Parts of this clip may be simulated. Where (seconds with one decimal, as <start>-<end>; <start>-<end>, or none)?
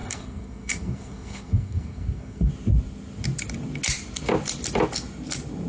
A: 0.0-2.5